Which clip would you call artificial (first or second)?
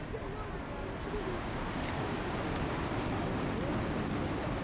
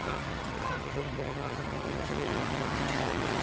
second